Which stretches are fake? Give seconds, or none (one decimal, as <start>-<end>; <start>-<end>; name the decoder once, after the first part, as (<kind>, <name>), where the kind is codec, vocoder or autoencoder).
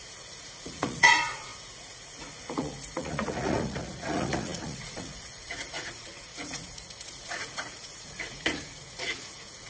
0.0-9.7 (vocoder, Vocos)